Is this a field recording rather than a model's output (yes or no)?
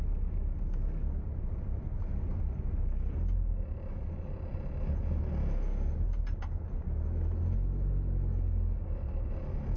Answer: yes